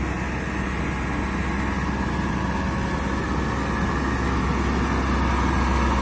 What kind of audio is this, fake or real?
real